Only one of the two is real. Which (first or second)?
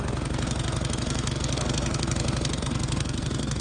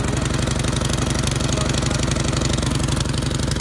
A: second